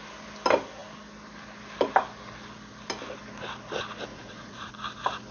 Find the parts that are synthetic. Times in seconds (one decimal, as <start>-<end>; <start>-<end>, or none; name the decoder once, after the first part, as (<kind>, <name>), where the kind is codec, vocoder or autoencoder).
4.1-4.7 (vocoder, Vocos)